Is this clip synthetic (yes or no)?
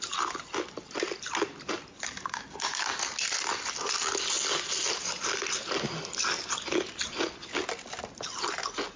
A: no